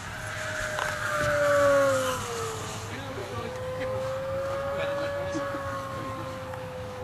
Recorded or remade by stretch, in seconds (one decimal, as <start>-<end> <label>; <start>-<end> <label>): 0.0-0.8 recorded; 0.8-2.6 remade; 2.6-3.2 recorded; 3.2-7.0 remade